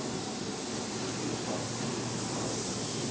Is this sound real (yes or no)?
yes